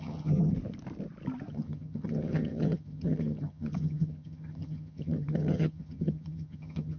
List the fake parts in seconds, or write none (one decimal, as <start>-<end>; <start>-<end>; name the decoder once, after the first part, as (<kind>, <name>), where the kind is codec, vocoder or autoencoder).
0.0-0.5 (vocoder, HiFi-GAN); 1.5-7.0